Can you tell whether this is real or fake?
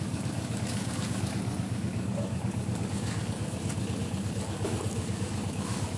fake